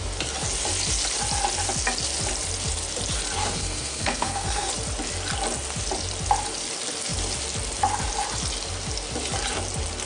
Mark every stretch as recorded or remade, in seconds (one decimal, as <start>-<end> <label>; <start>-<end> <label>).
0.0-3.4 recorded; 3.4-4.7 remade; 4.7-10.1 recorded